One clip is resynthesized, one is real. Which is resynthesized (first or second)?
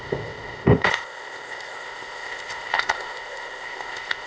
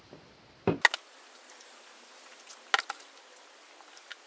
first